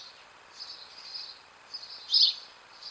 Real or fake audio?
real